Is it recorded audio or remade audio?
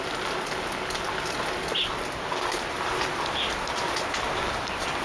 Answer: recorded